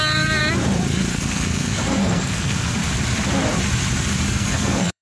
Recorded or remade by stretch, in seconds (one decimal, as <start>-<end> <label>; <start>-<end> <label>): 0.0-0.4 remade; 0.4-1.1 recorded; 1.1-2.8 remade; 2.8-4.2 recorded; 4.2-5.0 remade